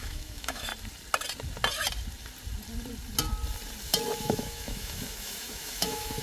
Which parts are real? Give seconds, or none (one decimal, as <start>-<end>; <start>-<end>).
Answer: 0.7-4.2